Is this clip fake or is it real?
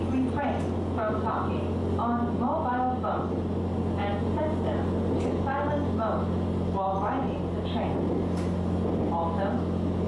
real